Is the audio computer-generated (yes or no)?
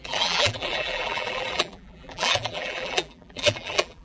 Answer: yes